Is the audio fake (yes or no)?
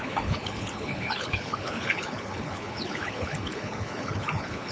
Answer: yes